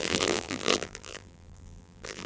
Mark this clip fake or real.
fake